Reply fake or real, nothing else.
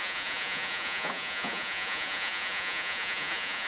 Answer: fake